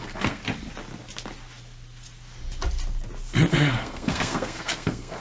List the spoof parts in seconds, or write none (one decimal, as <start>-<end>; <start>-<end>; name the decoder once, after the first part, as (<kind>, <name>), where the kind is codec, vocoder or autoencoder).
0.0-0.4 (codec, SNAC); 3.5-5.2